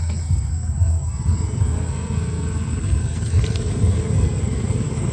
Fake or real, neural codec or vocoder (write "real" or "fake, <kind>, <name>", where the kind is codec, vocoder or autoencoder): fake, codec, SNAC